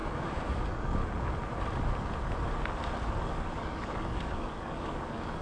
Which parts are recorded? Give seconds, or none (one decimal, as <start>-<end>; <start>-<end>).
1.0-3.3